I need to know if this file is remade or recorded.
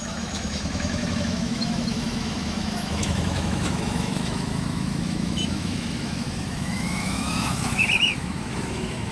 remade